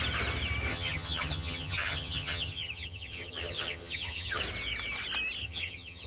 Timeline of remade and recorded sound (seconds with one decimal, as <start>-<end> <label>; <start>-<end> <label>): 0.0-0.7 recorded; 0.7-4.4 remade; 4.4-5.4 recorded; 5.4-6.1 remade